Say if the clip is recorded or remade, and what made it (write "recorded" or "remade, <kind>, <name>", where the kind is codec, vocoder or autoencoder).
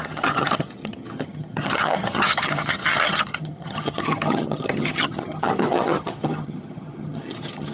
remade, vocoder, HiFi-GAN